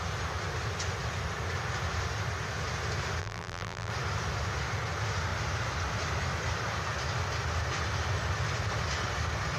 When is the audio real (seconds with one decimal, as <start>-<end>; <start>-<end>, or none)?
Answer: 0.0-3.2; 3.9-9.6